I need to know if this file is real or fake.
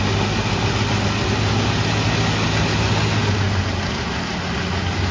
real